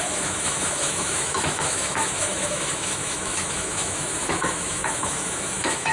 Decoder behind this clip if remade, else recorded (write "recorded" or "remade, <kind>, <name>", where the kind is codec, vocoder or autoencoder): remade, autoencoder, DAC-VAE